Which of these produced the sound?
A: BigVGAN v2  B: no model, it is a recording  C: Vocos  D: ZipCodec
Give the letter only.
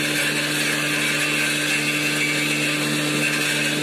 B